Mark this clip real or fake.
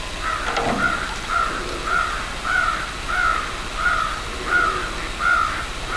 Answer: real